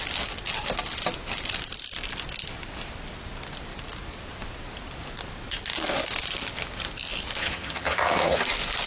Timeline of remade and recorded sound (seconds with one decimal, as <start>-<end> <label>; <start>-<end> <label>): 0.0-7.4 recorded; 7.4-8.4 remade; 8.4-8.9 recorded